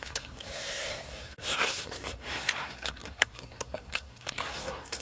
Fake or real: fake